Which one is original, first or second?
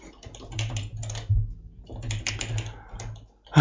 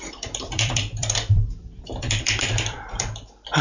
first